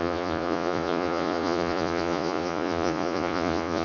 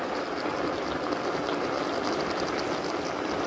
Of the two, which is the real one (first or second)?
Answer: second